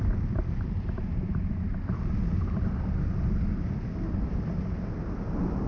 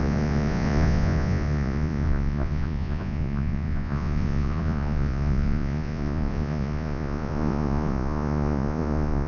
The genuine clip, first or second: first